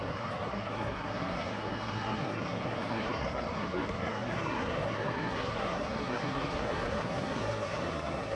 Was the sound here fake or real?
fake